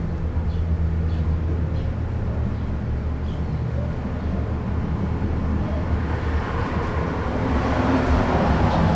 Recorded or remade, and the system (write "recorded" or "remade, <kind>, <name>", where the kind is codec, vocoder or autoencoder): recorded